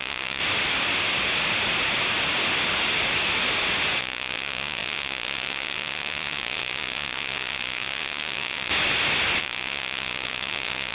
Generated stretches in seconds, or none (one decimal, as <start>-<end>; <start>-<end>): 0.0-0.4; 4.0-8.7; 9.4-10.9

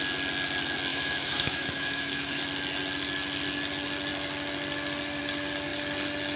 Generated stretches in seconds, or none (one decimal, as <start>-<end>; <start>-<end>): 0.9-2.4

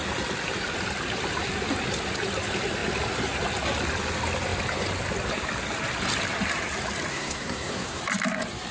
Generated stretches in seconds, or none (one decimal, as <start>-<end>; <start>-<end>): 7.1-8.0

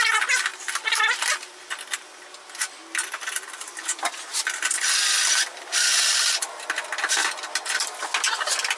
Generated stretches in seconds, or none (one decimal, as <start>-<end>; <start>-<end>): 0.5-2.2; 4.3-6.5

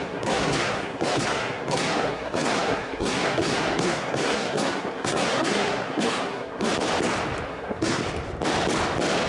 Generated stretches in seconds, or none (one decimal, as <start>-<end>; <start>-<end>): 0.0-6.7; 7.5-8.0